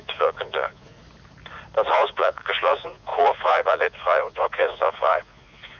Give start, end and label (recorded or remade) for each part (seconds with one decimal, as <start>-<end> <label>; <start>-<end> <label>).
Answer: 0.0-1.0 remade; 1.0-1.9 recorded; 1.9-5.8 remade